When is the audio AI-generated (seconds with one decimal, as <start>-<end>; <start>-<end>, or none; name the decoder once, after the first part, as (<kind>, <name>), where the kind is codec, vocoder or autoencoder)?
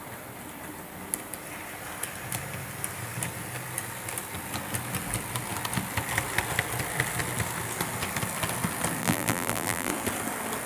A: 9.0-9.9 (vocoder, BigVGAN v2)